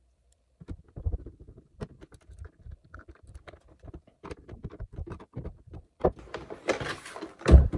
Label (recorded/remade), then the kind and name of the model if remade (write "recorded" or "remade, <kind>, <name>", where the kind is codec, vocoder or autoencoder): recorded